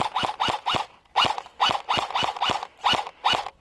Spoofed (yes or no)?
no